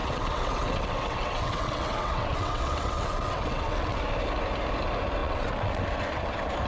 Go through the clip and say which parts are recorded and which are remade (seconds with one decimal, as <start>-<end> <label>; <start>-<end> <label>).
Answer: 0.0-4.0 remade; 4.0-5.2 recorded; 5.2-5.8 remade; 5.8-6.7 recorded